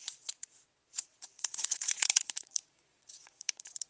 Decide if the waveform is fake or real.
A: fake